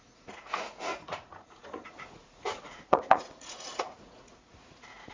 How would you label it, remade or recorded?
remade